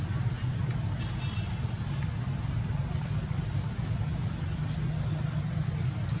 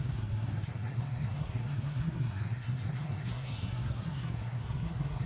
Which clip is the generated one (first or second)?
second